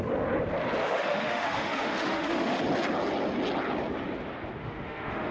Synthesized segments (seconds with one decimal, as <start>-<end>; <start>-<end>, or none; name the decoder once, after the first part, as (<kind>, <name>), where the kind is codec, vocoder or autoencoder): 0.8-2.6 (autoencoder, DAC-VAE); 4.6-5.3